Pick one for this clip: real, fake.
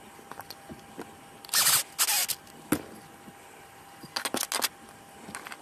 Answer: real